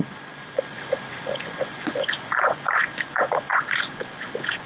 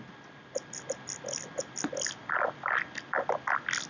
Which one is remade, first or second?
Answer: first